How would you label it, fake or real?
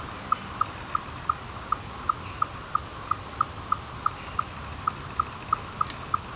real